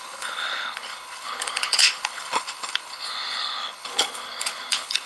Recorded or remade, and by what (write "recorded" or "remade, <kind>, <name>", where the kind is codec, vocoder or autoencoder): remade, codec, HILCodec